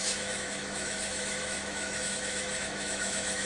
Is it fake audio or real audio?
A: fake